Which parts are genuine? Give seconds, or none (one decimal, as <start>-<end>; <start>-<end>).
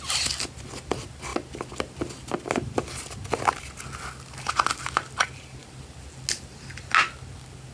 0.0-7.7